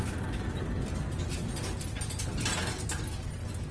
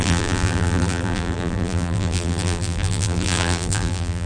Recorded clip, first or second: first